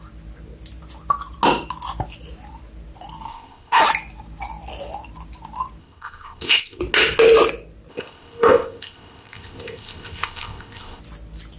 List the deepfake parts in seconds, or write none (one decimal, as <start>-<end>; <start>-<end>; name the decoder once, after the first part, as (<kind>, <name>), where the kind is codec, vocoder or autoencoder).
3.3-3.8 (codec, ZipCodec); 5.8-6.8; 7.9-11.0